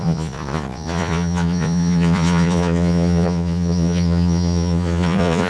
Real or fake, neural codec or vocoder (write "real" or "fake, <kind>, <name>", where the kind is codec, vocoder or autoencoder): fake, vocoder, Vocos